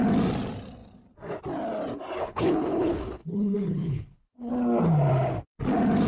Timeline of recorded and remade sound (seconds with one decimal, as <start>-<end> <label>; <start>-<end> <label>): 0.0-2.2 recorded; 2.2-4.5 remade; 4.5-6.1 recorded